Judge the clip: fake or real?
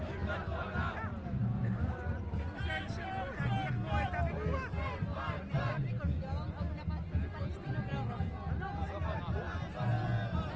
real